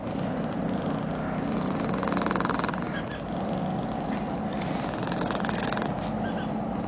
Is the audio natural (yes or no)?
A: yes